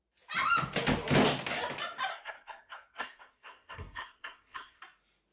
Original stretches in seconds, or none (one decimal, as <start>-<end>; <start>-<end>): 0.0-2.1; 4.8-5.3